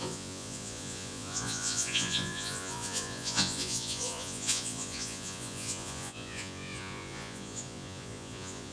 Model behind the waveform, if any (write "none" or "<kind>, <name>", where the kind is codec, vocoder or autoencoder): vocoder, Vocos